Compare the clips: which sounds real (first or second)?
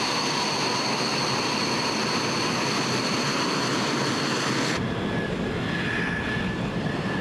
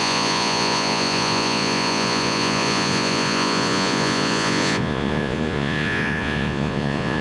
first